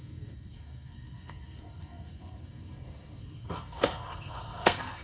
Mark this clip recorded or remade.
remade